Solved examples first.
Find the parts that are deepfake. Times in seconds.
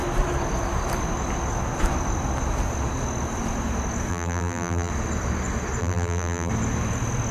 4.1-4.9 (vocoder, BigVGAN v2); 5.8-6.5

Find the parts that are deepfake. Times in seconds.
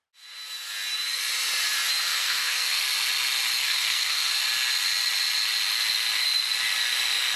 2.1-2.8 (codec, SNAC); 3.6-4.3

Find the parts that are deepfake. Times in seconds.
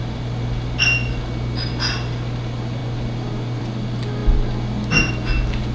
none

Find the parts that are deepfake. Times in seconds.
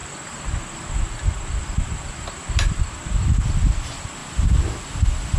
none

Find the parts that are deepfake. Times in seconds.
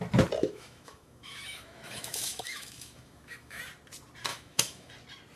0.4-3.6 (autoencoder, DAC-VAE); 4.3-4.9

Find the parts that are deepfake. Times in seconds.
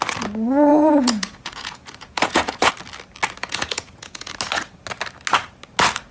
0.7-2.7 (vocoder, Vocos); 3.4-4.3